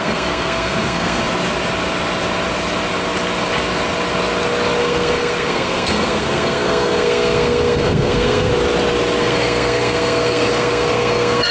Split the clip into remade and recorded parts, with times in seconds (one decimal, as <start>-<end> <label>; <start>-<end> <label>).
0.0-1.2 remade; 1.2-4.8 recorded; 4.8-8.5 remade; 8.5-9.2 recorded; 9.2-11.5 remade